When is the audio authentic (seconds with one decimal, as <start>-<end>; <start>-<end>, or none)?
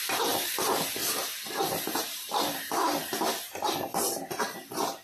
1.0-1.8; 3.0-3.7